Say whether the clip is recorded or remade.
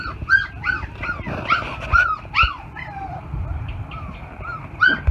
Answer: recorded